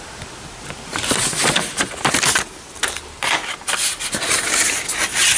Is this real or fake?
real